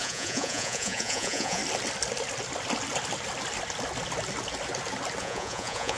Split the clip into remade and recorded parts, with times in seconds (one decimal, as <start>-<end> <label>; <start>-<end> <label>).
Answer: 0.0-1.6 remade; 1.6-5.2 recorded; 5.2-6.0 remade